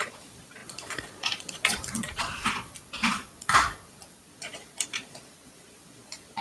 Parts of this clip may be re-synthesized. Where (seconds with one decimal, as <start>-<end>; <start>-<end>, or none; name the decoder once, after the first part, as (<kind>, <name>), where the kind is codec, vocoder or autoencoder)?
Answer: 0.0-6.4 (vocoder, Vocos)